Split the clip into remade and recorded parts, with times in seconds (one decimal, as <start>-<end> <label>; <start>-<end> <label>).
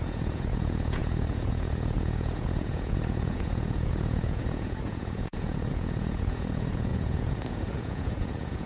0.0-8.7 remade